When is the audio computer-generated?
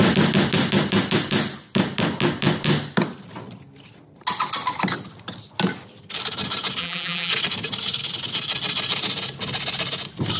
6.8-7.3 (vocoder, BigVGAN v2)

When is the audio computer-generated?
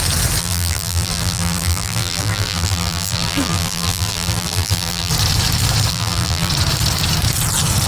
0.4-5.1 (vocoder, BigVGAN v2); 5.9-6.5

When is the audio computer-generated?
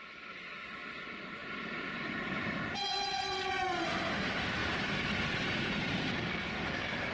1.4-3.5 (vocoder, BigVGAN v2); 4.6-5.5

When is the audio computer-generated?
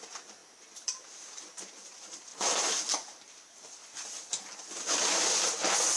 0.0-2.3 (vocoder, BigVGAN v2); 3.2-3.8; 4.6-6.0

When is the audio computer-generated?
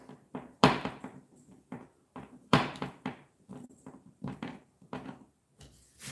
1.1-4.8 (vocoder, BigVGAN v2)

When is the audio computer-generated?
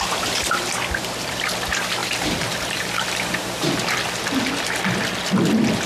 2.0-3.7 (vocoder, BigVGAN v2)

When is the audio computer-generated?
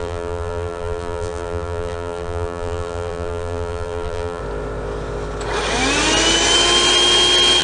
0.0-4.4 (vocoder, BigVGAN v2)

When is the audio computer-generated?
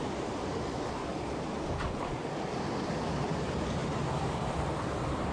1.1-2.3 (vocoder, BigVGAN v2)